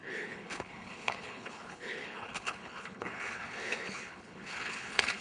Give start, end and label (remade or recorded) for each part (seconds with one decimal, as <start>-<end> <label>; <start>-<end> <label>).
0.0-5.2 remade